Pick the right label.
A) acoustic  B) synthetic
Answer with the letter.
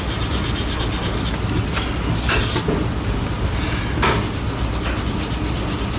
A